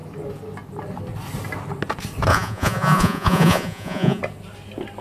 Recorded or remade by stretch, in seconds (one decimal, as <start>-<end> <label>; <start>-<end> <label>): 0.0-2.3 recorded; 2.3-4.2 remade; 4.2-5.0 recorded